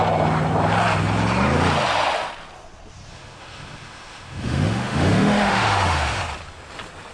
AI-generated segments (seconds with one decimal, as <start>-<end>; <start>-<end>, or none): 3.1-6.2